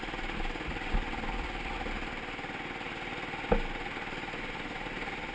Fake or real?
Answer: real